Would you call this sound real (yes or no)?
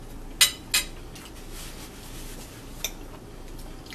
yes